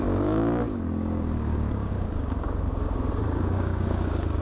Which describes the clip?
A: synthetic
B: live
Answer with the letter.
A